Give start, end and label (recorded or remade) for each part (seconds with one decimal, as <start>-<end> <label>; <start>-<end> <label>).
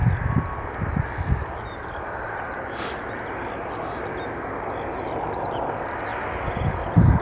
0.0-7.2 recorded